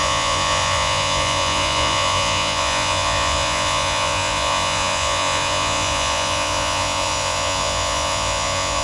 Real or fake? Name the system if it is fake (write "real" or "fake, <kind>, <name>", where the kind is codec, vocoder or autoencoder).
fake, vocoder, Vocos